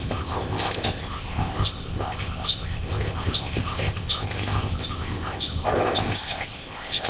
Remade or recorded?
remade